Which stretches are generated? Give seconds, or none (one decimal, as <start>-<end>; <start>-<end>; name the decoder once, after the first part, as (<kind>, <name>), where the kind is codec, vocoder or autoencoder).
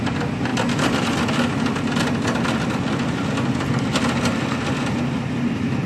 none